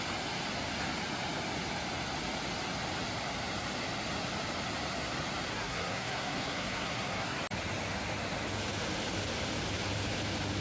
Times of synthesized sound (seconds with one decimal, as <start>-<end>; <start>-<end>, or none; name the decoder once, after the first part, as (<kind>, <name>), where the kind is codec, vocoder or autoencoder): 5.5-7.4 (codec, SNAC)